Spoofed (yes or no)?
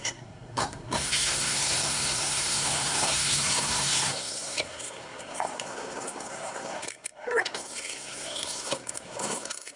yes